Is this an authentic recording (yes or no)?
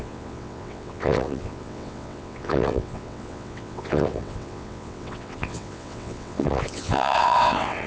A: no